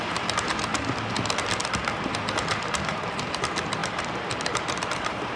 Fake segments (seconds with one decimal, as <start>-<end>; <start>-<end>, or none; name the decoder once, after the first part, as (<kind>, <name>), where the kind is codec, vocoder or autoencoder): 0.0-0.7 (vocoder, BigVGAN v2); 2.1-5.4